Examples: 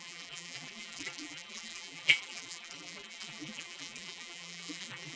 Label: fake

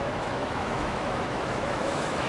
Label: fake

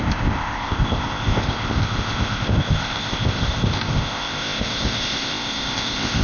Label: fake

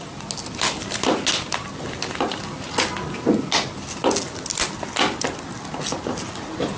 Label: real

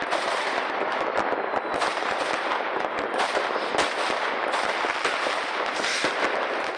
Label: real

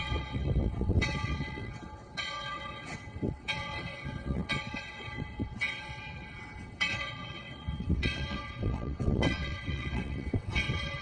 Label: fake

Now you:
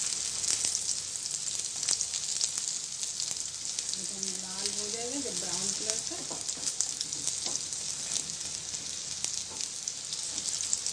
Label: real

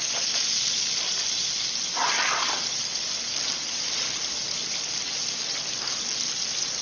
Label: real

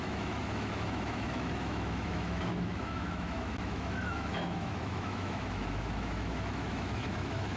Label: fake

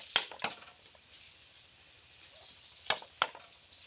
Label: real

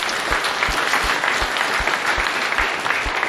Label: real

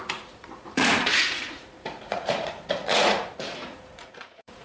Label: fake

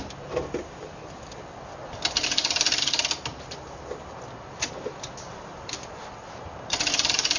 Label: real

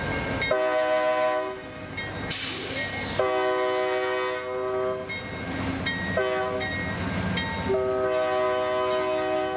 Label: real